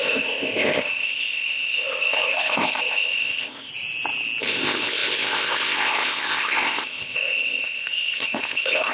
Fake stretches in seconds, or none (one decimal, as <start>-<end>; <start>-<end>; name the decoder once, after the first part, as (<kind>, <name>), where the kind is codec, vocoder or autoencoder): 0.0-3.7 (codec, ZipCodec); 4.4-8.9